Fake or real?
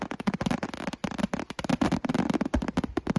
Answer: real